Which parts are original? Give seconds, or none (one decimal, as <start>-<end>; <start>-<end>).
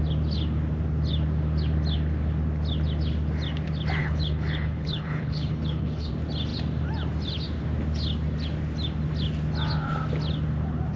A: 0.0-4.0; 6.1-11.0